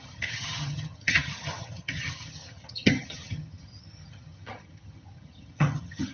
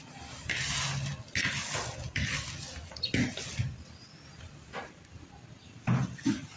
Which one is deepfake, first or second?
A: first